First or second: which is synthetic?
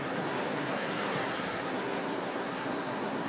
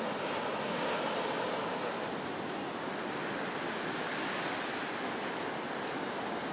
first